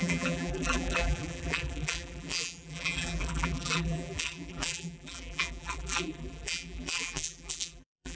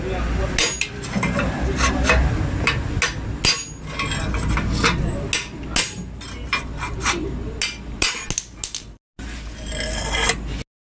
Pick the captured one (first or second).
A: second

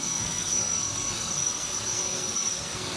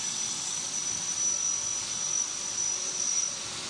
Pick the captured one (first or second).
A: second